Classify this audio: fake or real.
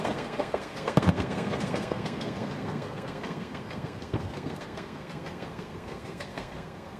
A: fake